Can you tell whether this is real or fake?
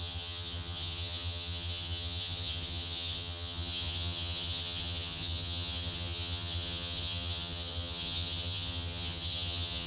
fake